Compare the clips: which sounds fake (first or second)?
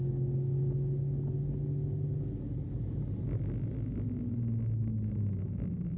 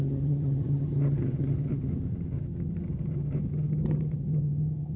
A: second